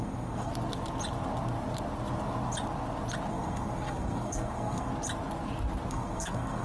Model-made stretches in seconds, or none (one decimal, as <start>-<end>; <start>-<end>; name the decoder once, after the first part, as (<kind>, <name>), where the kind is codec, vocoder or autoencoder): 0.0-0.5 (codec, SNAC); 3.3-4.9; 5.9-6.6